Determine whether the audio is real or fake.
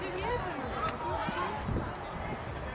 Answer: real